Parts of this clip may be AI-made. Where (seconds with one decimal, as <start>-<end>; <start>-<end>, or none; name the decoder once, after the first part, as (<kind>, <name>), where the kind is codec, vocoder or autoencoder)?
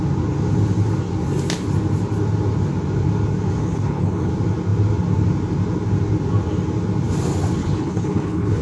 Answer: 3.6-4.3 (codec, HILCodec); 7.6-8.6